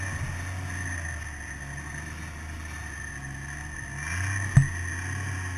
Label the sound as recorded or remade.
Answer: recorded